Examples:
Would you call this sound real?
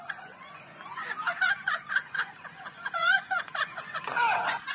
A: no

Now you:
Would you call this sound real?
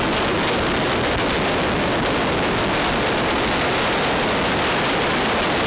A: yes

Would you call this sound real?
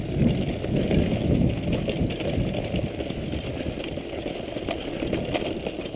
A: yes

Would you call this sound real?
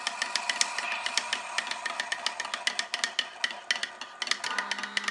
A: yes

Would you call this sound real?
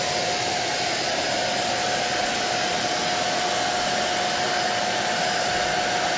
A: yes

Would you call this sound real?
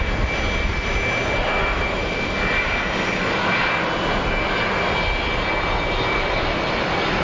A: yes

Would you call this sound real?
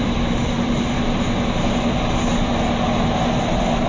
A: yes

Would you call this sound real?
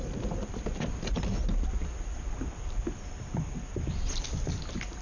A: yes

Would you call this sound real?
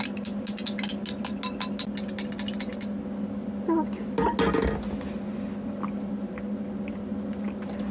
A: yes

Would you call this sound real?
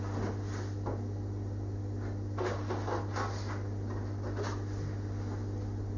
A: yes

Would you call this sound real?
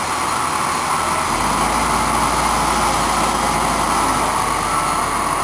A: yes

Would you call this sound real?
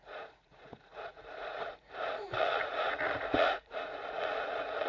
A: no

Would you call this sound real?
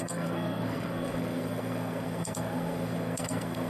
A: no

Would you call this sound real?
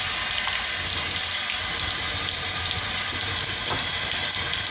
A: yes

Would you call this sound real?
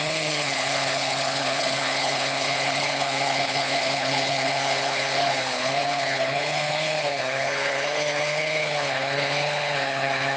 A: no